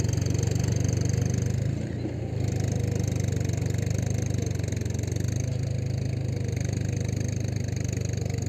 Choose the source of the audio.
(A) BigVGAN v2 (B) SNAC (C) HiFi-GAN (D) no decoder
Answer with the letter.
D